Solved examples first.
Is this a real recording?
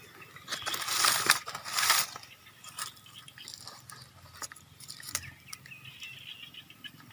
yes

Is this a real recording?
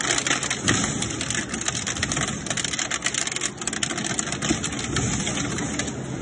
yes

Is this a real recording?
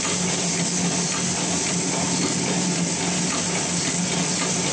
yes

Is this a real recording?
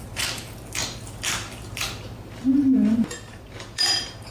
no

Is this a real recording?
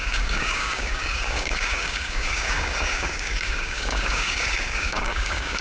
no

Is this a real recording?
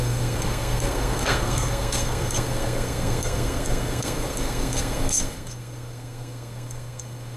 no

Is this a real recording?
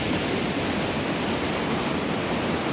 yes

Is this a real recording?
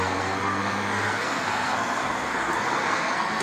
no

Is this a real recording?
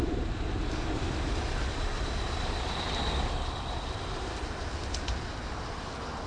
yes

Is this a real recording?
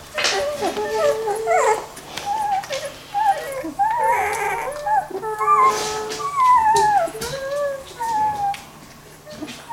yes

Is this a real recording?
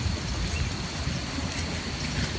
yes